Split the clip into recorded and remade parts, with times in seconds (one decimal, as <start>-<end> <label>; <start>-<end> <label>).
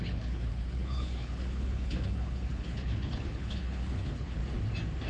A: 0.0-4.4 remade; 4.4-5.1 recorded